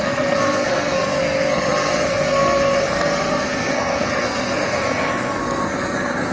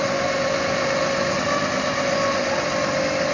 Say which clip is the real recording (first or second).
second